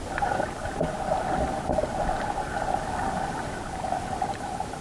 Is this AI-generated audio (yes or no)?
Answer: no